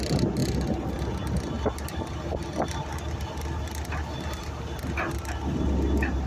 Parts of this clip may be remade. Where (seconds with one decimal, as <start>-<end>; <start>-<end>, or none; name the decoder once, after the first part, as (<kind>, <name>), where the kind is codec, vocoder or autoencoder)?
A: none